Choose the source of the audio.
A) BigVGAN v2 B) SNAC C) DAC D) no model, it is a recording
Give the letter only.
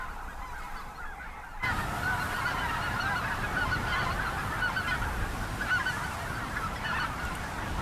D